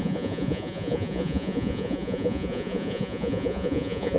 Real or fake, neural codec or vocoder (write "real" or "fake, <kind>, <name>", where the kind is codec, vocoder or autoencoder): fake, vocoder, Vocos